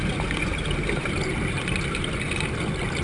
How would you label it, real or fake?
real